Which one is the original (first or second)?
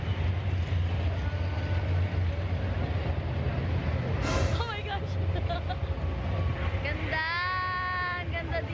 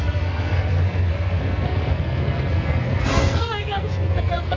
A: first